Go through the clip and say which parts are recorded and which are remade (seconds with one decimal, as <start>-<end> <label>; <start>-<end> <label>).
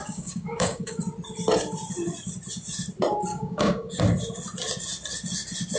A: 0.0-1.0 remade; 1.0-3.3 recorded; 3.3-4.0 remade; 4.0-5.8 recorded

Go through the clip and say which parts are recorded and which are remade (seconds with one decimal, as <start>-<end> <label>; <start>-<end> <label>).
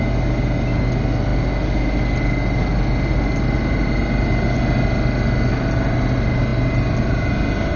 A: 0.0-7.8 recorded